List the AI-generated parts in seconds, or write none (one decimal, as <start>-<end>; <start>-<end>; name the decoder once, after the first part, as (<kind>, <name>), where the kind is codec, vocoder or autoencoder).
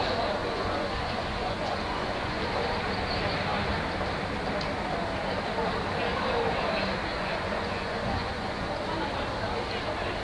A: 0.4-2.4 (vocoder, Vocos); 7.1-8.7